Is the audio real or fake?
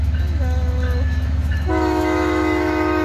fake